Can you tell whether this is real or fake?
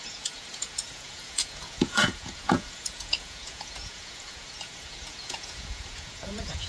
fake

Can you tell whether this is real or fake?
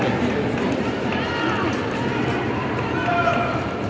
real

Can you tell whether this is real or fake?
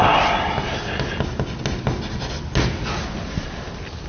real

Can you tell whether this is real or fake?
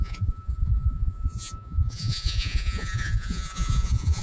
fake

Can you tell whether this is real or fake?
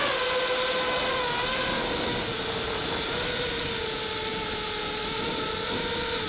real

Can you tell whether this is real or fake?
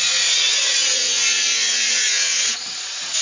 fake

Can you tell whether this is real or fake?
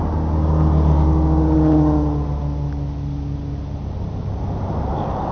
real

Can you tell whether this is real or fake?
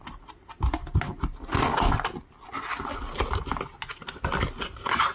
real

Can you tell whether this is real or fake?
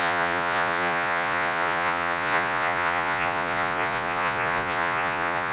fake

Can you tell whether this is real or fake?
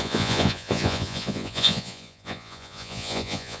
fake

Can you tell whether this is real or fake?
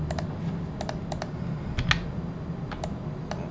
real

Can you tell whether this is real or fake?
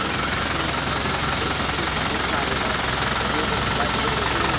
real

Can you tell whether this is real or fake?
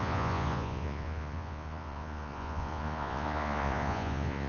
fake